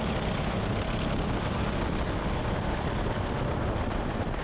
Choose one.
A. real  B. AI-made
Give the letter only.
A